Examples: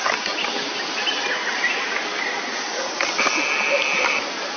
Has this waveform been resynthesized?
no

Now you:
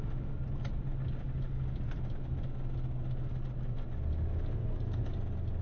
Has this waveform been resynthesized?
no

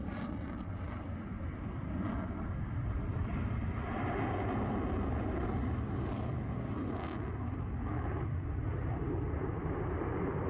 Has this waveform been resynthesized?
no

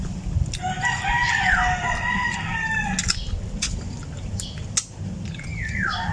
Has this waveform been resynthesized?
no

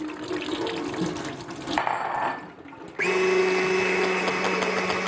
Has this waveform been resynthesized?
no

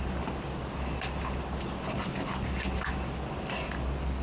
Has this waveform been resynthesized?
no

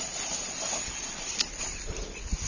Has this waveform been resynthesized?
no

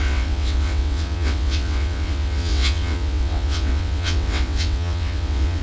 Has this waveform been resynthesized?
yes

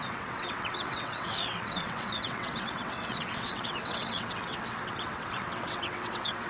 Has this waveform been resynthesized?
yes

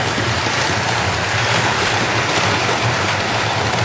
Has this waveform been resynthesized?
no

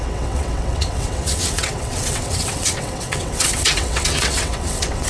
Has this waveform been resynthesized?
yes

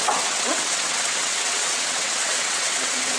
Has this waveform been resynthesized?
yes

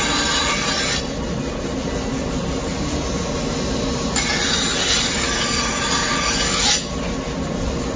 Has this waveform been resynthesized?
no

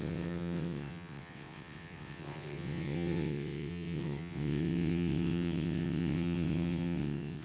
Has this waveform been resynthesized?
yes